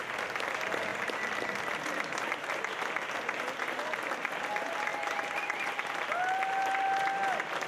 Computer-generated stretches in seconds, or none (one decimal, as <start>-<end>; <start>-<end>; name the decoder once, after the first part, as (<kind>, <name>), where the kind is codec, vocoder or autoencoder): none